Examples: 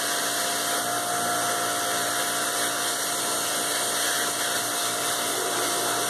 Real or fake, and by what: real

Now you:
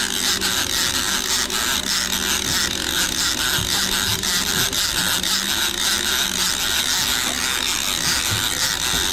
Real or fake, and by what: real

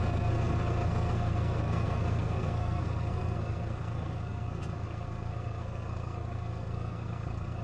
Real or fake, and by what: fake, codec, SNAC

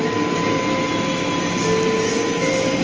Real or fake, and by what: real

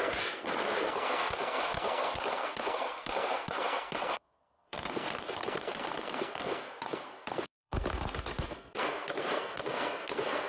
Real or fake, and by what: fake, codec, SNAC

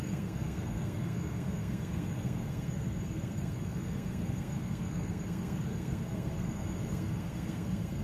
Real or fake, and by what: fake, codec, SNAC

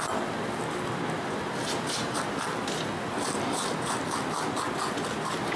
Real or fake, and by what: real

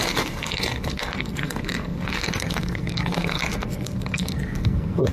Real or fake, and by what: fake, codec, SNAC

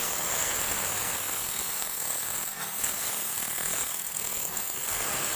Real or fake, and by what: fake, codec, SNAC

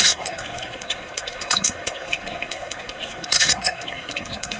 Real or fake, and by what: fake, codec, SNAC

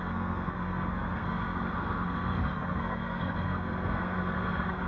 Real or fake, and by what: fake, codec, SNAC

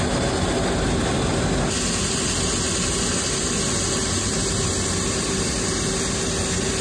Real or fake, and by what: real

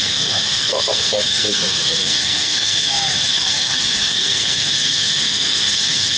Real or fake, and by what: fake, codec, SNAC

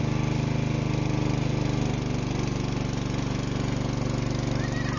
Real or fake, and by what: real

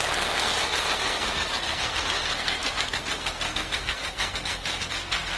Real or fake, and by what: fake, codec, SNAC